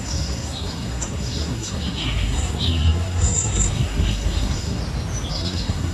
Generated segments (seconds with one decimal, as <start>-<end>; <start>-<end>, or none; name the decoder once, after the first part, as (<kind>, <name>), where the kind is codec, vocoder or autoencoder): 0.0-4.8 (codec, SNAC); 5.3-5.9